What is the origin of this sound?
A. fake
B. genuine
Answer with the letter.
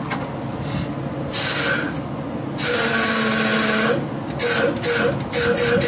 B